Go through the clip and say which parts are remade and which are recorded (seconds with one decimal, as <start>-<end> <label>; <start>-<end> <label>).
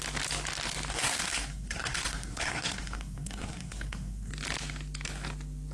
0.0-0.9 recorded; 0.9-4.3 remade; 4.3-5.7 recorded